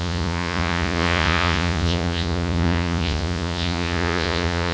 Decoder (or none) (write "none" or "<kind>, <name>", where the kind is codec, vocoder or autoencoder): vocoder, Vocos